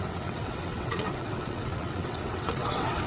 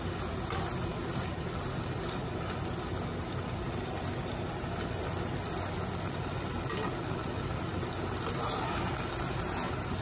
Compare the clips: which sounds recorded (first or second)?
second